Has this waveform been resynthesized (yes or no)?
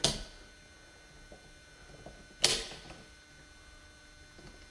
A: no